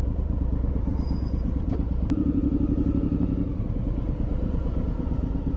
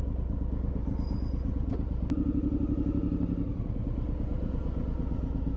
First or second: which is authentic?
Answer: second